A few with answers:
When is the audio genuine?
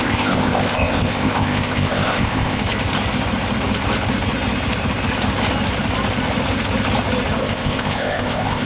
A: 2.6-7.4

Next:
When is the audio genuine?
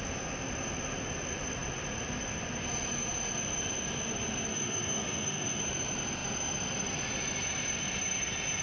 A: 0.0-4.5; 5.6-8.6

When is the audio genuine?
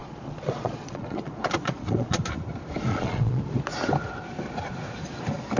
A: 2.2-2.9; 3.4-5.6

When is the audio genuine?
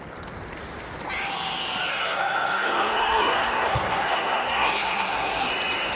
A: 0.0-1.9; 5.5-6.0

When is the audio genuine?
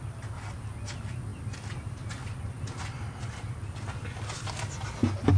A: 0.0-5.4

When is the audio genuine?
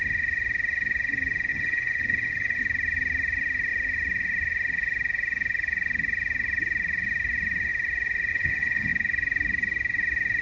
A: 0.0-1.5; 2.6-8.3; 8.9-10.4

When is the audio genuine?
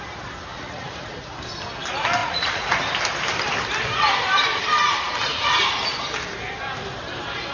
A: 0.0-0.5; 1.2-2.2; 2.7-5.3; 5.8-7.5